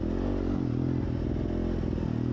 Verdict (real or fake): real